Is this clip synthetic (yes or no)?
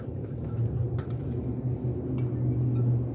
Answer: no